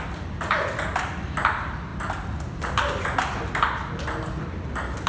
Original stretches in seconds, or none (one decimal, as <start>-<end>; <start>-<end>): 0.0-5.1